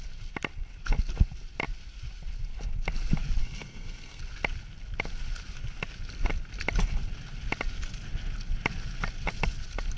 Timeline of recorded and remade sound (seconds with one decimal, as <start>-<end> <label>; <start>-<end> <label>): 0.0-3.4 recorded; 3.4-4.2 remade; 4.2-10.0 recorded

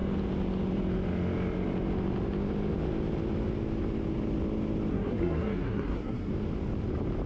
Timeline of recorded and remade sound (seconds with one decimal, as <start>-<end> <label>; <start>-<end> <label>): 0.0-4.9 recorded; 4.9-6.3 remade; 6.3-7.3 recorded

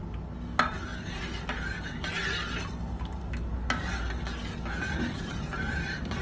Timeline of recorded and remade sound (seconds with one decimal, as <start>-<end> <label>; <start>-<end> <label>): 0.0-6.2 recorded

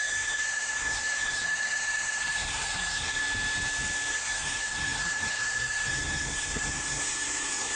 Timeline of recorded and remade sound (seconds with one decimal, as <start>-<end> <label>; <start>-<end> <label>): 0.0-3.2 remade; 3.2-4.1 recorded; 4.1-7.7 remade

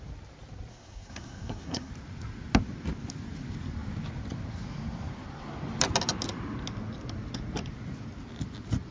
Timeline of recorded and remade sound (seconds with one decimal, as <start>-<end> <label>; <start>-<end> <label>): 0.0-0.7 recorded; 0.7-1.9 remade; 1.9-8.9 recorded

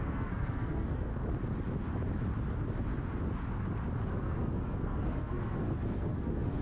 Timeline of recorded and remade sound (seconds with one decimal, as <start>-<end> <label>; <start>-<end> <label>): 0.0-1.1 remade; 1.1-4.2 recorded; 4.2-6.6 remade

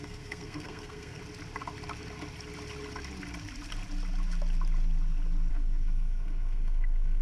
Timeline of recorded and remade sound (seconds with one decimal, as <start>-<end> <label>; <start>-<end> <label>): 0.0-1.2 remade; 1.2-5.5 recorded; 5.5-7.2 remade

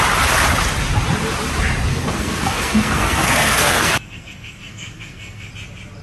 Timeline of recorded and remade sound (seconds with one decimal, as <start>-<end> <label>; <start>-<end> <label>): 0.0-1.9 recorded; 1.9-5.5 remade; 5.5-6.0 recorded